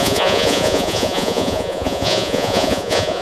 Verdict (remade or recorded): remade